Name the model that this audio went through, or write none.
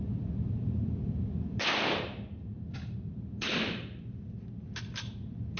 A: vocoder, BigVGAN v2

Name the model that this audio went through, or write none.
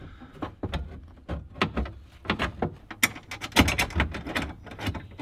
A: none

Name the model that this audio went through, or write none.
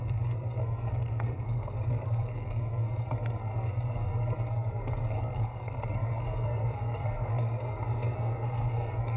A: codec, SNAC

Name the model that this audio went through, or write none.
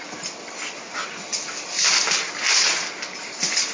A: none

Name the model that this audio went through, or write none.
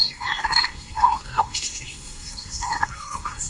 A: codec, SNAC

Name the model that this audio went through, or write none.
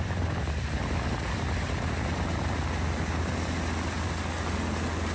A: none